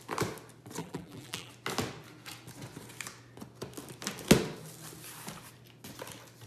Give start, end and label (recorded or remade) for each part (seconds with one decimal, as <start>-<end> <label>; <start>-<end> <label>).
0.0-0.8 recorded; 0.8-1.5 remade; 1.5-6.5 recorded